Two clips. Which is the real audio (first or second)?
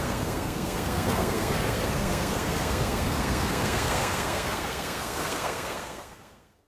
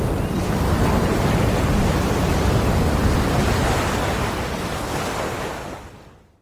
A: second